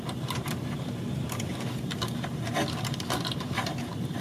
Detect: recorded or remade remade